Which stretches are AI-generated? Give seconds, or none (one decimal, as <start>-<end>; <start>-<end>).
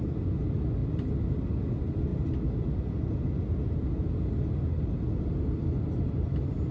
0.0-2.1; 4.8-6.7